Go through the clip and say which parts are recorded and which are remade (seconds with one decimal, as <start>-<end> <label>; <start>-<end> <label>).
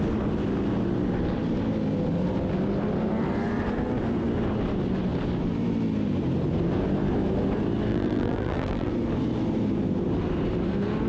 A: 0.0-7.9 recorded; 7.9-8.9 remade; 8.9-11.1 recorded